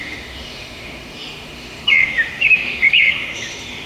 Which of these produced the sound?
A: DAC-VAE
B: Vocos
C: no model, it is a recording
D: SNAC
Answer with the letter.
A